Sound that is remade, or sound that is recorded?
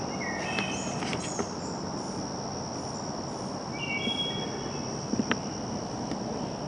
recorded